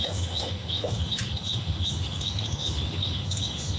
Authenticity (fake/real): fake